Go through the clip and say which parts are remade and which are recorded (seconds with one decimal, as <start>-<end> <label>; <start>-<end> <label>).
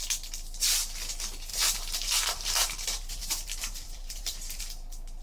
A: 0.0-1.5 recorded; 1.5-4.6 remade; 4.6-5.2 recorded